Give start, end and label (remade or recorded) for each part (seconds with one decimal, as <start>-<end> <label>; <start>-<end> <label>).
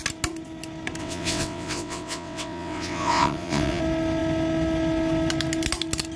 0.0-1.0 recorded; 1.0-3.8 remade; 3.8-6.2 recorded